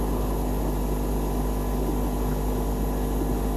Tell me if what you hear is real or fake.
real